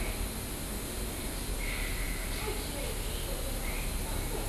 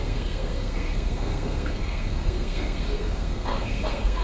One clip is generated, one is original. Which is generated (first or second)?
second